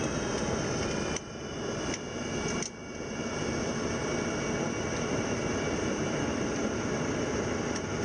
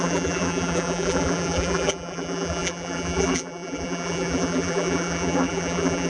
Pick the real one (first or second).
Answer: first